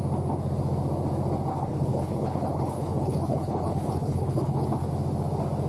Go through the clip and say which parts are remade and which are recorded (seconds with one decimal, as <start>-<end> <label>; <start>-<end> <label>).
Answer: 0.0-1.5 recorded; 1.5-4.9 remade; 4.9-5.7 recorded